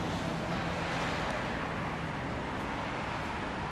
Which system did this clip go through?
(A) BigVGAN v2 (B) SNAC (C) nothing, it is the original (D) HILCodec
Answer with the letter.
C